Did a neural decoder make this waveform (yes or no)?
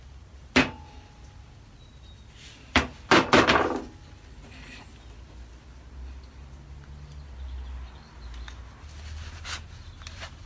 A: no